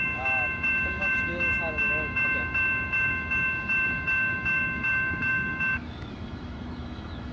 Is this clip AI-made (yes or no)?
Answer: yes